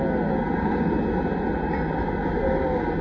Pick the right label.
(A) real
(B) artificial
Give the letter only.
A